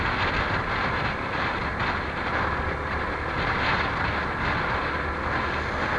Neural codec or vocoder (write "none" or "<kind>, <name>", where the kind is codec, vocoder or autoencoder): none